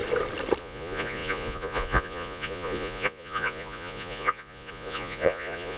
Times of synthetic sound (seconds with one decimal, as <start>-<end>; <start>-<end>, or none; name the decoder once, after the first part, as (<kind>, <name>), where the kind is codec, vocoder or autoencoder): 0.6-5.8 (vocoder, Vocos)